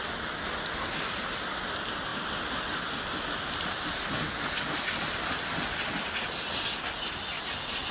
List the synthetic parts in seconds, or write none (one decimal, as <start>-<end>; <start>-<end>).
none